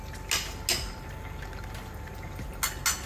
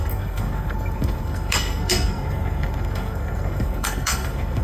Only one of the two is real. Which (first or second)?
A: first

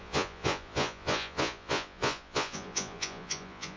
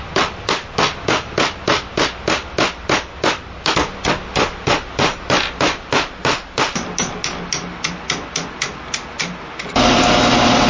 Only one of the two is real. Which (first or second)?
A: second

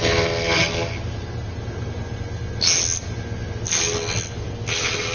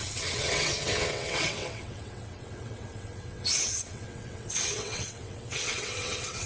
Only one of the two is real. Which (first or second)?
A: first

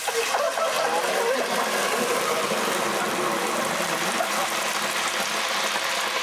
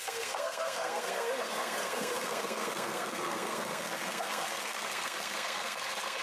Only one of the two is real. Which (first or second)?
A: first